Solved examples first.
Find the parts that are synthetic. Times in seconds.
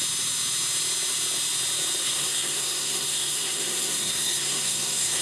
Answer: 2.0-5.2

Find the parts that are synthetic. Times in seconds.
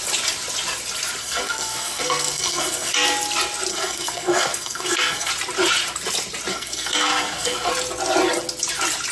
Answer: 1.2-2.9; 3.7-5.3; 6.5-7.7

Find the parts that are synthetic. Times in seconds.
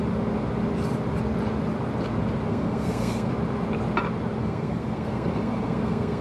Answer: 2.5-3.3; 4.4-6.2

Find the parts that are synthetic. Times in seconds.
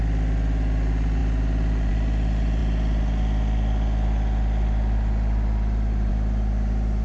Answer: none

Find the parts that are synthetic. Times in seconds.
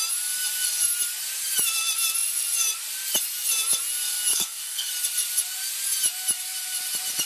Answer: 4.3-4.9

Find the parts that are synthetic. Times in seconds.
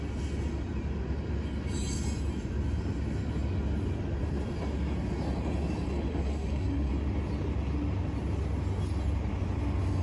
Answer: 6.1-6.9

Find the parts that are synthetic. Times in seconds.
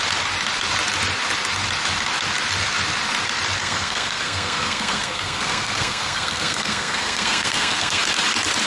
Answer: 3.6-8.0